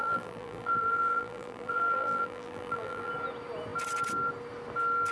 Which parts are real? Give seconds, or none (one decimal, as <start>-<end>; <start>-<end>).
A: 3.1-5.1

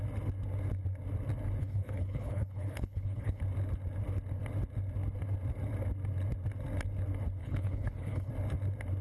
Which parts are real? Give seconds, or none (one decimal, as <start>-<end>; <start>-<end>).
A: 0.0-1.6; 3.4-7.4; 8.3-9.0